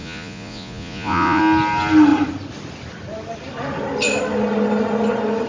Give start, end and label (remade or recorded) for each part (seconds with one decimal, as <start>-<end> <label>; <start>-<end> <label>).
0.0-1.4 remade; 1.4-5.5 recorded